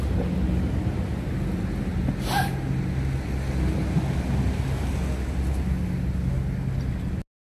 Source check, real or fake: real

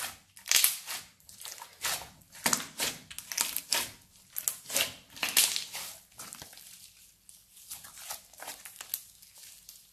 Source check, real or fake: real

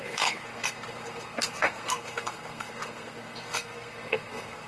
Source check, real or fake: fake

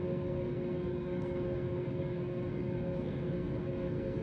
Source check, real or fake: fake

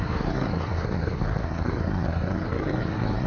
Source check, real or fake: fake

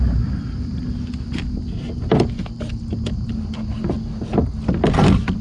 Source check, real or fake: real